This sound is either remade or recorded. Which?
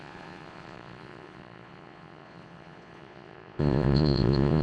remade